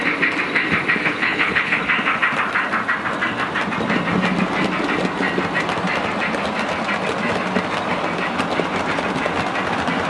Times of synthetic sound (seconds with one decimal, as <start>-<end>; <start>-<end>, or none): 1.0-1.8